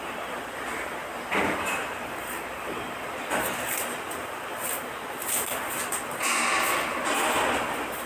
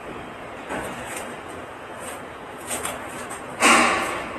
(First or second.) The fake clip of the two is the second